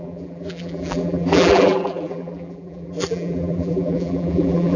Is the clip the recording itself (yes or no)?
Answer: no